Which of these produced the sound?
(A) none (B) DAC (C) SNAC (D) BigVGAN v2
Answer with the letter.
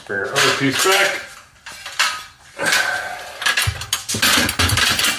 A